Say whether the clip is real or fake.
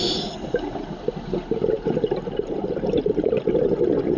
real